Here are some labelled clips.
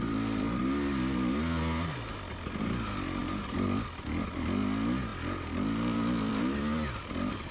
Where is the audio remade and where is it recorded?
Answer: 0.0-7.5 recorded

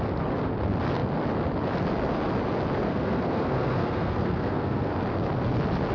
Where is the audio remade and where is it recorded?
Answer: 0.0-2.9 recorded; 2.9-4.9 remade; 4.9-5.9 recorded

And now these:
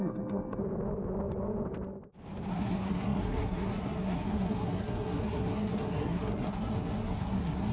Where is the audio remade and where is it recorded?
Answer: 0.0-0.6 remade; 0.6-2.5 recorded; 2.5-7.7 remade

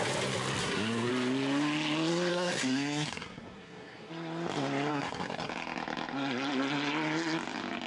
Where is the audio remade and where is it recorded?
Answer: 0.0-0.6 recorded; 0.6-1.1 remade; 1.1-2.3 recorded; 2.3-4.1 remade; 4.1-4.9 recorded; 4.9-5.5 remade; 5.5-7.9 recorded